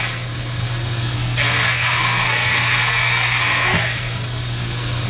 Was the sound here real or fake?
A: fake